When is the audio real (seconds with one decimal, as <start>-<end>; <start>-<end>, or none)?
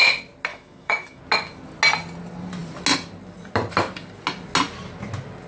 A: 0.0-0.5; 1.2-5.5